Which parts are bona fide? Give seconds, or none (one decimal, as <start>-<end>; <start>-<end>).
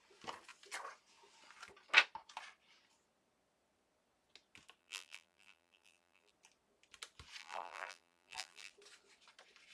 0.0-4.8; 6.3-7.4; 8.7-9.7